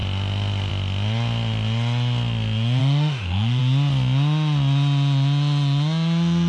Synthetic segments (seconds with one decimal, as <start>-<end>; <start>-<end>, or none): 2.8-3.6